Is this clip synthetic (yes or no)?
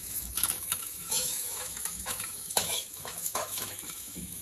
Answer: yes